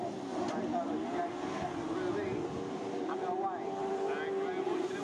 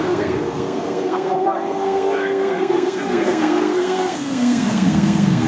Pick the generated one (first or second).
second